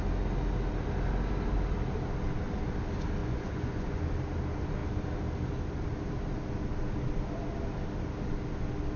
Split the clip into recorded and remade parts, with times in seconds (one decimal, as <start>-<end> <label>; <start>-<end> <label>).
0.0-3.2 recorded; 3.2-4.0 remade; 4.0-9.0 recorded